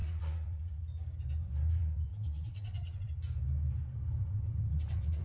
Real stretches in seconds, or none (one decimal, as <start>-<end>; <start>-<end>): 0.8-1.8; 3.1-4.2